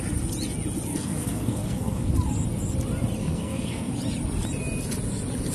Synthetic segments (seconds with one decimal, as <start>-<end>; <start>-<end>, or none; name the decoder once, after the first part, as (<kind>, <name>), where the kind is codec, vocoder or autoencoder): 0.9-2.1 (codec, SNAC); 3.2-3.9